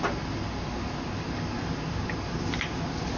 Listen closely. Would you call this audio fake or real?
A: real